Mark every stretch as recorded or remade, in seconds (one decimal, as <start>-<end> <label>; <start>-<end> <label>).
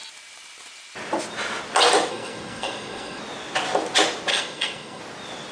0.0-2.1 recorded; 2.1-3.2 remade; 3.2-4.3 recorded; 4.3-5.0 remade; 5.0-5.5 recorded